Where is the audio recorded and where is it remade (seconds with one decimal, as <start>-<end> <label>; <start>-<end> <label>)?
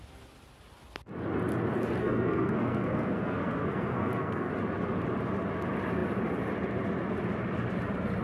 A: 0.0-2.0 recorded; 2.0-4.5 remade; 4.5-8.2 recorded